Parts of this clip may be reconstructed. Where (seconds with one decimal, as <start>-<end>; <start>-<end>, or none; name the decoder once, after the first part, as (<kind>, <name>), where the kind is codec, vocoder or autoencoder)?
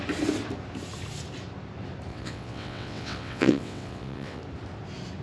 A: 2.1-4.4 (vocoder, WaveNeXt)